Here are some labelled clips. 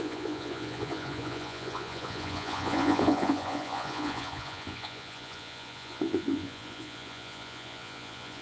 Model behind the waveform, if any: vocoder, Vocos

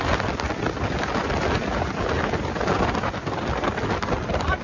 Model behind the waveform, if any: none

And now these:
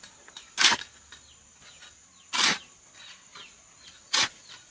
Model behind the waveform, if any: none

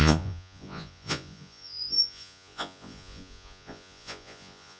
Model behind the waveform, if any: vocoder, Vocos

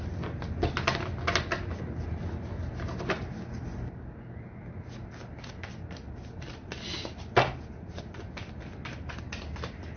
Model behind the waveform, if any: none